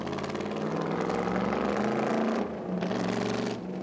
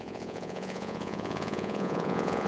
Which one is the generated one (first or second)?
second